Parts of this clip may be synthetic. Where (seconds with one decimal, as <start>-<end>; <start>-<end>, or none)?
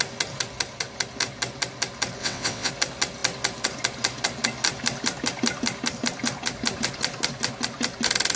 2.2-2.7